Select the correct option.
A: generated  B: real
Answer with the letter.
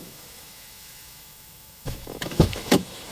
A